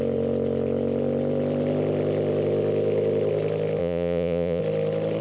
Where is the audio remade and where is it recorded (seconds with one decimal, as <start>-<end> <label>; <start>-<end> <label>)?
0.0-3.8 recorded; 3.8-4.6 remade; 4.6-5.2 recorded